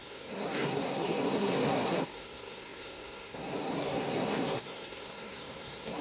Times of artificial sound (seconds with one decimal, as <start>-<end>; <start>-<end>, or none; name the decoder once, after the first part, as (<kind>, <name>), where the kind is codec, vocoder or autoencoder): 0.0-6.0 (codec, SNAC)